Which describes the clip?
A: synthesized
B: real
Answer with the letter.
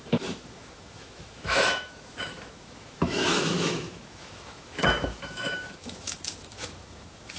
A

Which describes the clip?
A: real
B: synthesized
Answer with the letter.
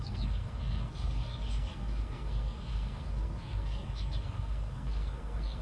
B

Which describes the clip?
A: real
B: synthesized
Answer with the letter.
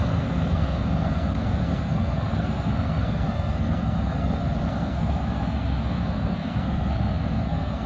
B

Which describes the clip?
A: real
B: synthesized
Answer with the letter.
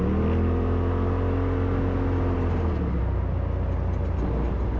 A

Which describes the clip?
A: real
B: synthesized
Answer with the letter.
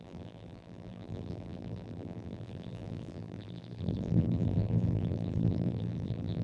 B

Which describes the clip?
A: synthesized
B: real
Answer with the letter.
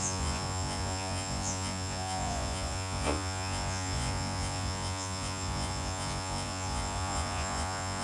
A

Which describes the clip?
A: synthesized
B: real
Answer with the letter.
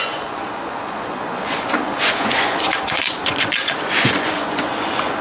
A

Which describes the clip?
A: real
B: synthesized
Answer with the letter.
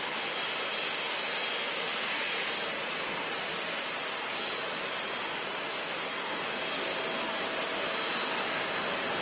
A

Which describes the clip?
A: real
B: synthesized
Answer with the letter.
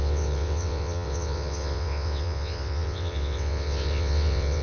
B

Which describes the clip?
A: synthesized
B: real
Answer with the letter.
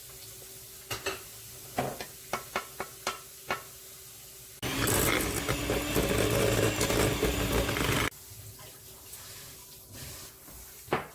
B